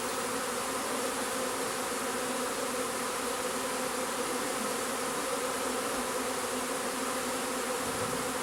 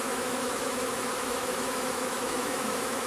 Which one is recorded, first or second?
first